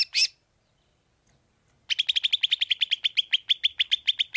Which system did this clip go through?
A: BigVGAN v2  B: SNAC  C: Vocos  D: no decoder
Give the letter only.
D